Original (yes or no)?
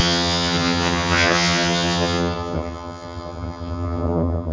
no